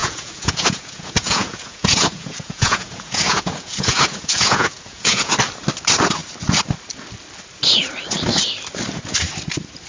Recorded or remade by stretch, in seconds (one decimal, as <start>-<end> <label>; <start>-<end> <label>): 0.0-5.3 remade; 5.3-9.9 recorded